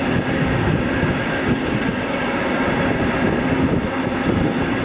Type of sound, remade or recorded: recorded